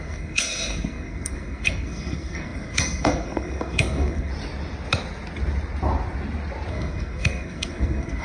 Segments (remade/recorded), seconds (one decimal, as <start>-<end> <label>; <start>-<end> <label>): 0.0-4.3 remade; 4.3-6.7 recorded; 6.7-8.2 remade